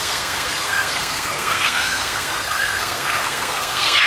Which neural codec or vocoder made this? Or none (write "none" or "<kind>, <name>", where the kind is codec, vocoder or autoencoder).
codec, SNAC